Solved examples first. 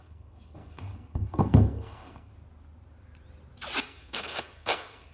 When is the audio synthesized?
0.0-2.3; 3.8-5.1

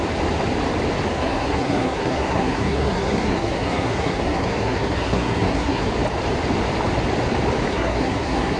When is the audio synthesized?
1.1-5.9; 7.7-8.6

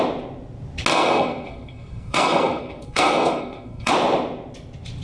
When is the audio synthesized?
0.9-3.9

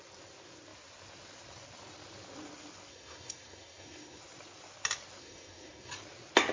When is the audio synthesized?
2.9-4.2; 5.2-5.9

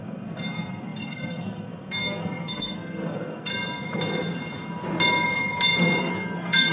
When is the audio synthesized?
0.0-3.5; 6.0-6.7

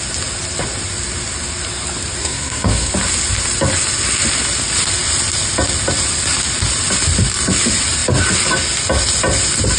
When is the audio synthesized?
2.2-2.9

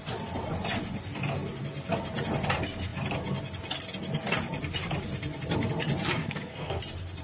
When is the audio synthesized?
6.2-6.8